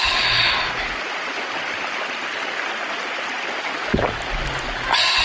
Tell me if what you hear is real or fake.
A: real